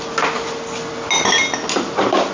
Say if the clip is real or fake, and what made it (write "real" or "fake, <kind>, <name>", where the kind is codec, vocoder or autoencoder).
real